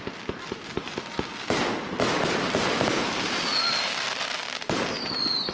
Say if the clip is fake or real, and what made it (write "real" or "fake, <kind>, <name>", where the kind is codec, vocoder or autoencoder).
real